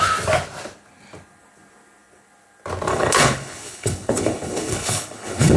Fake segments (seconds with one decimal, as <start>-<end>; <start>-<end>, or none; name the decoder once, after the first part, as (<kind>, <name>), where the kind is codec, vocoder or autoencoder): 2.9-5.6 (codec, HILCodec)